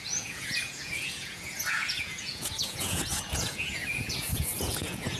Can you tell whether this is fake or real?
fake